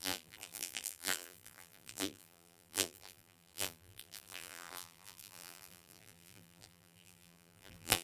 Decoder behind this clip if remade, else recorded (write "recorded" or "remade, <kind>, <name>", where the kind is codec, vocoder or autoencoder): remade, vocoder, BigVGAN v2